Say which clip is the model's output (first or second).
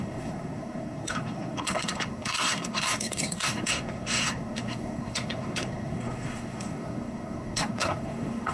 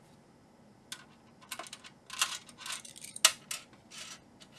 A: first